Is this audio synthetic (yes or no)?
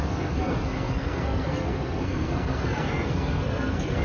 yes